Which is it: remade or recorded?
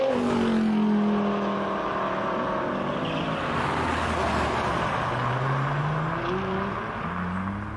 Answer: recorded